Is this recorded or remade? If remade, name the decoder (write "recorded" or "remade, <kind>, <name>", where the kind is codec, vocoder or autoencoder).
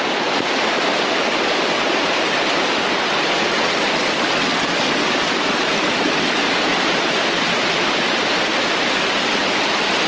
recorded